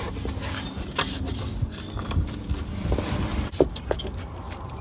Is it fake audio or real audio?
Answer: real